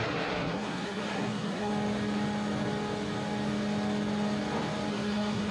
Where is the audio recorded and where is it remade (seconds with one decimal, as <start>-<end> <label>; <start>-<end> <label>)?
0.0-1.7 remade; 1.7-4.9 recorded; 4.9-5.5 remade